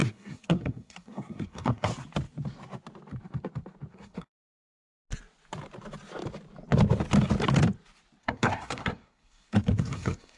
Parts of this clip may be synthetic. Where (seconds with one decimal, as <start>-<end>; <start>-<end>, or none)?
0.0-1.9; 3.9-4.4; 8.2-10.4